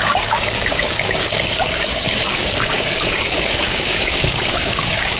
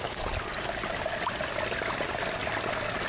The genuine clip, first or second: second